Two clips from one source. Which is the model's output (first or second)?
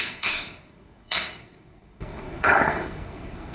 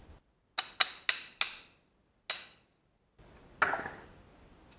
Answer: first